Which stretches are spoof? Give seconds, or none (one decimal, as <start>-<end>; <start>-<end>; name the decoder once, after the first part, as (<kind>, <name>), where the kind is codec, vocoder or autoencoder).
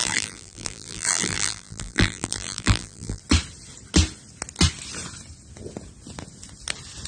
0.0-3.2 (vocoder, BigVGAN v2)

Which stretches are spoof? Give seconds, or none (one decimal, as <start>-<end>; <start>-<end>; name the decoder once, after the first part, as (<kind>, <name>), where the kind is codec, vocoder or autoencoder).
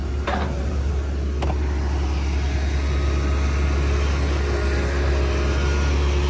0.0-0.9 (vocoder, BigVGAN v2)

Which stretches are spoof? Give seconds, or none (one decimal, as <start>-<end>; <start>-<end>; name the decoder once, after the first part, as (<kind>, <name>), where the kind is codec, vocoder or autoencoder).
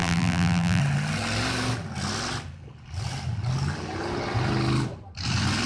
0.0-0.8 (vocoder, BigVGAN v2)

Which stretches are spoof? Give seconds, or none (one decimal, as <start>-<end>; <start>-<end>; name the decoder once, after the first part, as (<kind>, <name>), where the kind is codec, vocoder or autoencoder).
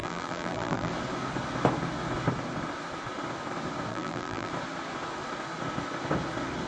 0.0-0.9 (vocoder, BigVGAN v2); 3.9-4.5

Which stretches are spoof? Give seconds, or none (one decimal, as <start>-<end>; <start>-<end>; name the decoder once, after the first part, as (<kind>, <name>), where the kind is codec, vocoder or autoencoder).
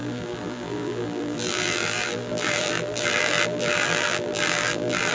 0.0-5.1 (vocoder, BigVGAN v2)